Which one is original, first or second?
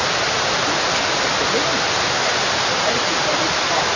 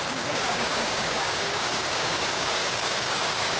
first